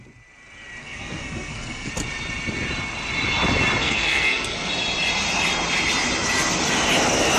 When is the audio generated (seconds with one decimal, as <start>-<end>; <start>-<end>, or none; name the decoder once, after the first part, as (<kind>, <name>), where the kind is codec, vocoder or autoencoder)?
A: 0.8-1.9 (codec, SNAC); 3.8-4.7